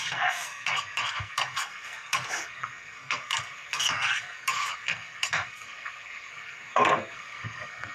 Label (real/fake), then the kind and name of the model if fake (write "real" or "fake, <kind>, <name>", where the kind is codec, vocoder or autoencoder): fake, codec, SNAC